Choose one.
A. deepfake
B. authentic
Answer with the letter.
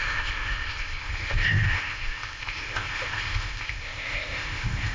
A